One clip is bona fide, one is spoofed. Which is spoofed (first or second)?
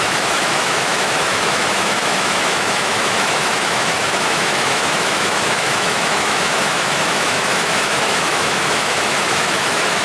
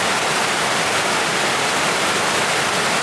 first